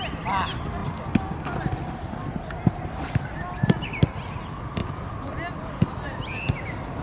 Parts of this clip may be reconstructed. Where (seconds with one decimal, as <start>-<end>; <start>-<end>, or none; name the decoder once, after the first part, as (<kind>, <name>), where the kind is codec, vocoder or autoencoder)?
none